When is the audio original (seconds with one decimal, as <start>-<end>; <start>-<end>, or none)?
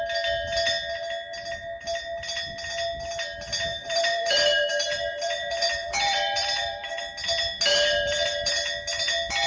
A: 0.0-3.7; 7.0-7.7; 8.5-9.5